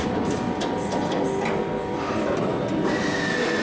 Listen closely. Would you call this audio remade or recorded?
recorded